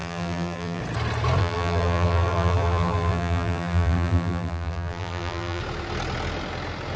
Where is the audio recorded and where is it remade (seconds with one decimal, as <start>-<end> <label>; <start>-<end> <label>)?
0.0-0.8 remade; 0.8-1.4 recorded; 1.4-5.6 remade; 5.6-7.0 recorded